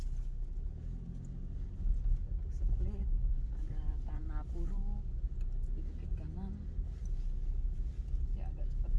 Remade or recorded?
recorded